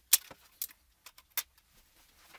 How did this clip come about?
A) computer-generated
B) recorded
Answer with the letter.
B